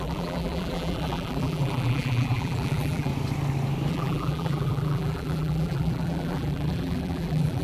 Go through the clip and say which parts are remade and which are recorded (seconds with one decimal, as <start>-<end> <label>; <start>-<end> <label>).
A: 0.0-3.1 remade; 3.1-3.9 recorded; 3.9-7.6 remade